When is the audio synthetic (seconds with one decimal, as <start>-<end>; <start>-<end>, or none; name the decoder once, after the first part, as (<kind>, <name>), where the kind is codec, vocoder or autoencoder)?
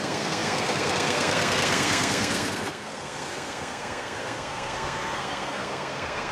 0.0-6.3 (codec, SNAC)